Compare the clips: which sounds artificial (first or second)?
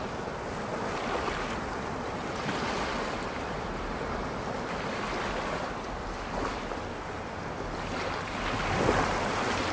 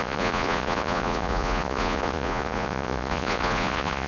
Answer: second